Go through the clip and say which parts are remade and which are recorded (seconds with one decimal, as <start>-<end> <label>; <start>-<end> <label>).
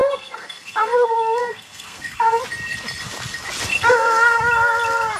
0.0-0.9 remade; 0.9-1.4 recorded; 1.4-2.4 remade; 2.4-3.7 recorded; 3.7-4.4 remade; 4.4-5.2 recorded